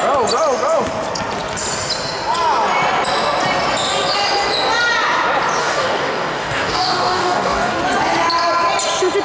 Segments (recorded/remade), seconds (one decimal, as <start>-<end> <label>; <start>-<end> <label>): 0.0-5.6 recorded; 5.6-7.8 remade; 7.8-9.2 recorded